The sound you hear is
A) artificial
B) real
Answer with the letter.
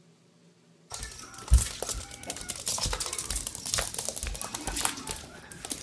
B